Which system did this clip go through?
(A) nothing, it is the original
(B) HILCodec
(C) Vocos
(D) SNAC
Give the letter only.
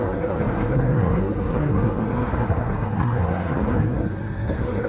D